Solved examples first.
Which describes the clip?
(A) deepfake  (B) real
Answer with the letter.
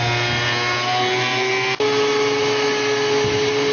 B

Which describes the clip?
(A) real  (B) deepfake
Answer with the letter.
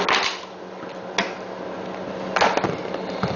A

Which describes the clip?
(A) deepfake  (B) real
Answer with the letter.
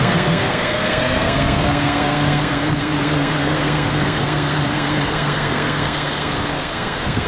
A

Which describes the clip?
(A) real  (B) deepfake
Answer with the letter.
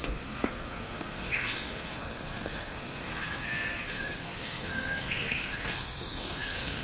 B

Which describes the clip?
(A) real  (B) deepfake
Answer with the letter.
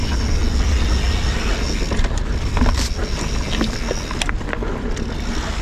A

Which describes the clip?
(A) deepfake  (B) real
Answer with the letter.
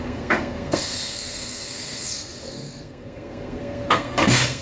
A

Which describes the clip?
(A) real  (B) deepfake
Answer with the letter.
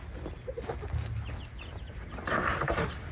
A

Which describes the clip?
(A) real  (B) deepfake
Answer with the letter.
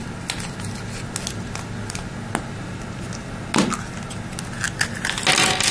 A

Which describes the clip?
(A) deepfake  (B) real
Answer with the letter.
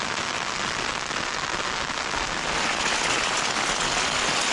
B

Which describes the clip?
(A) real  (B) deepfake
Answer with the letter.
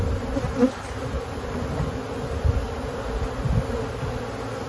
A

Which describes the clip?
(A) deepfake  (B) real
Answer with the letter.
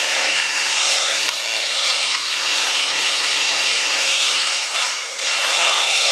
A